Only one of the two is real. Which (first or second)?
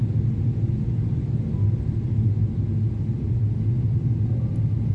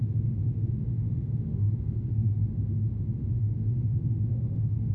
first